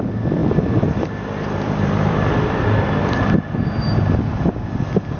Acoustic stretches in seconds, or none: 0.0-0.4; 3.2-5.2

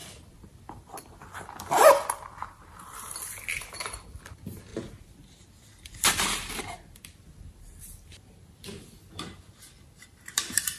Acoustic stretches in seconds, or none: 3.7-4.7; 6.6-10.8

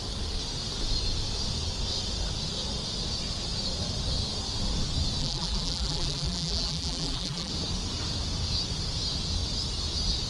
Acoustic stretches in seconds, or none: 0.0-5.2; 7.5-10.3